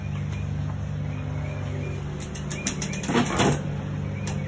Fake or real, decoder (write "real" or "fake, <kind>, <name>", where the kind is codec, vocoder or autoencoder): real